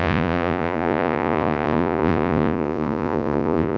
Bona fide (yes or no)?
no